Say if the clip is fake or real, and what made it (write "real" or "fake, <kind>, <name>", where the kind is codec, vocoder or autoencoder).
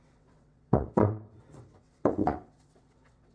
fake, vocoder, WaveNeXt